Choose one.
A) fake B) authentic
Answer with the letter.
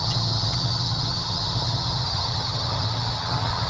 A